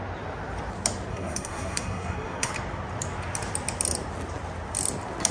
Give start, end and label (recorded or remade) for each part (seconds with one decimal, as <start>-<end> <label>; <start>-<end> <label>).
0.0-1.1 recorded; 1.1-2.5 remade; 2.5-5.3 recorded